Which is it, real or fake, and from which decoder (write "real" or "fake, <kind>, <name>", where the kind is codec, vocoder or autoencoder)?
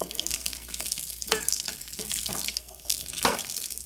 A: fake, codec, SNAC